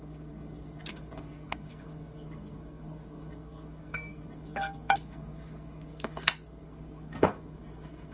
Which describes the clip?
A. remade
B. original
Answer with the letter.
A